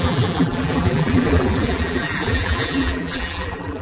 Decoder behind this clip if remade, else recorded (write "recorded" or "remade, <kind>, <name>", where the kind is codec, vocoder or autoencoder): remade, vocoder, BigVGAN v2